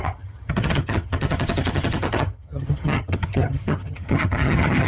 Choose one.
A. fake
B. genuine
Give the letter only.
A